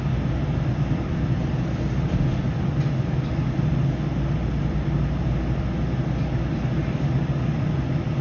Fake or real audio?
real